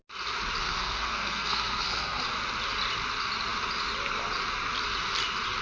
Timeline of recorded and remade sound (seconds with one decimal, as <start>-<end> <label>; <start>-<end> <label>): 0.0-0.6 recorded; 0.6-2.2 remade; 2.2-5.6 recorded